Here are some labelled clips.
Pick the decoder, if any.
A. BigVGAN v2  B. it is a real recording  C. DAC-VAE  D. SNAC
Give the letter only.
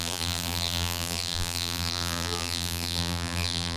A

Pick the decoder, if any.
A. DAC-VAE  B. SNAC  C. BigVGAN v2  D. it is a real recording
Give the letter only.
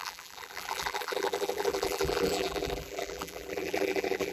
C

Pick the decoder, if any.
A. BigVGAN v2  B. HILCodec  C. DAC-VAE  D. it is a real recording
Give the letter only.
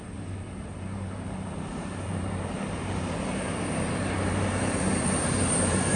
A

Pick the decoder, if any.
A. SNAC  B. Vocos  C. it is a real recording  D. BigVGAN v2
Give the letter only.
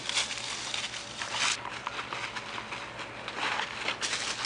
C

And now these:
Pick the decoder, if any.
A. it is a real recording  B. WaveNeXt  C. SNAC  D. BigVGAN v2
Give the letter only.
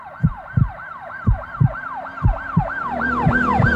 D